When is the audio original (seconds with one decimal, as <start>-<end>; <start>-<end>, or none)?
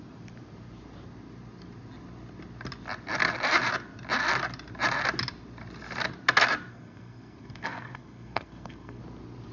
0.0-6.7; 9.0-9.5